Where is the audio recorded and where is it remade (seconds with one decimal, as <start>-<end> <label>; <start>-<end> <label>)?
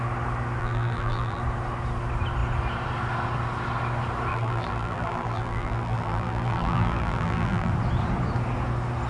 0.0-0.6 recorded; 0.6-1.4 remade; 1.4-4.3 recorded; 4.3-7.7 remade; 7.7-9.1 recorded